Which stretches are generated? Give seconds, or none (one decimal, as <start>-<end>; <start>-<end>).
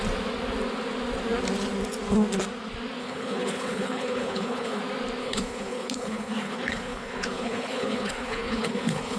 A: 3.0-4.8; 5.2-9.2